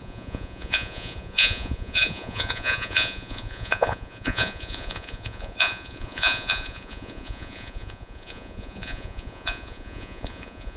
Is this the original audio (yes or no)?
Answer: no